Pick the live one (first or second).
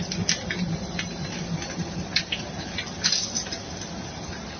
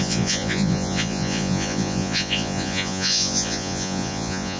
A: first